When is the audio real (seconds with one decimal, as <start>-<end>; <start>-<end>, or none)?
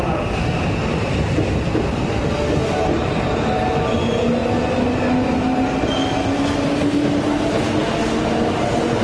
0.0-9.0